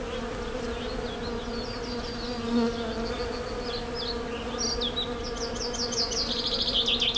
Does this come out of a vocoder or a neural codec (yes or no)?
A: no